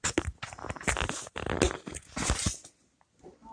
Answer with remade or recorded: recorded